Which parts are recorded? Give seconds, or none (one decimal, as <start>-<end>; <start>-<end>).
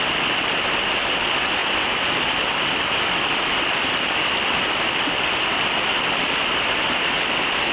0.0-7.7